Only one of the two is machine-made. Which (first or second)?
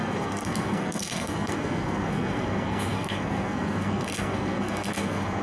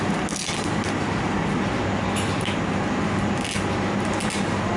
first